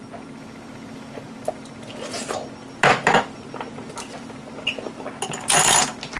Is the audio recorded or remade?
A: recorded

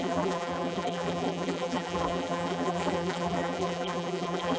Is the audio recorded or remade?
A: remade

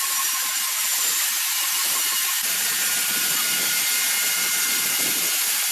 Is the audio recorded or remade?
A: remade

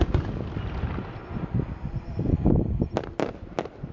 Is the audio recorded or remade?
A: recorded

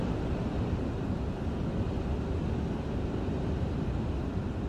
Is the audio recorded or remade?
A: recorded